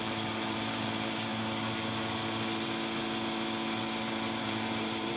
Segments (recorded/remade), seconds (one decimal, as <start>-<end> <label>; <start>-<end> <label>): 0.0-1.3 remade; 1.3-4.4 recorded; 4.4-5.2 remade